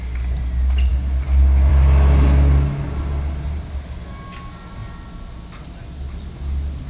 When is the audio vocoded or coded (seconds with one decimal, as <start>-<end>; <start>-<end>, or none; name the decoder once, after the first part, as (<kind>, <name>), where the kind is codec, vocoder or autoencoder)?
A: none